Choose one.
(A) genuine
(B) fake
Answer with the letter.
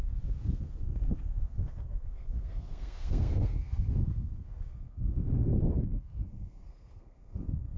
B